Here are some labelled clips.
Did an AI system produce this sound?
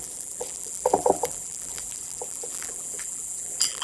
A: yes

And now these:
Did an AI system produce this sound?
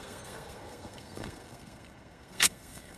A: yes